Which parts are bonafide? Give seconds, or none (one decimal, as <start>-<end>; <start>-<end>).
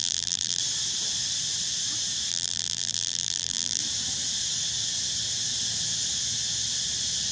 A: 0.6-2.3; 3.8-7.3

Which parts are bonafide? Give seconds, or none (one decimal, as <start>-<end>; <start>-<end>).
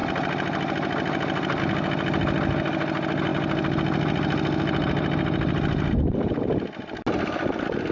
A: 0.0-7.9